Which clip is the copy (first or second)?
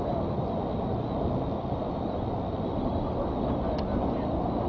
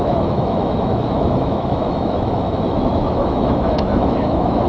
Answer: second